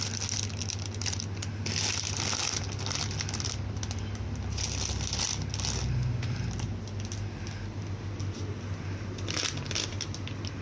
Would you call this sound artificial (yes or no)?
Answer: no